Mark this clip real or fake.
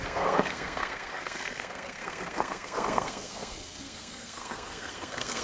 fake